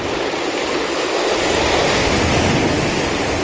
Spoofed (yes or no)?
no